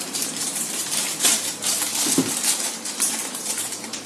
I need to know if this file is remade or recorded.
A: remade